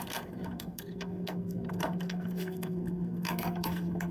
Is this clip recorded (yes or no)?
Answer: no